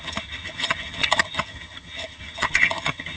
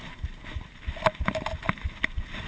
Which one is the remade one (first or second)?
first